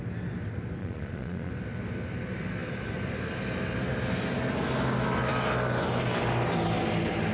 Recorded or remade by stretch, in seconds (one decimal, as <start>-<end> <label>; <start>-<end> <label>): 0.0-0.8 recorded; 0.8-1.5 remade; 1.5-7.3 recorded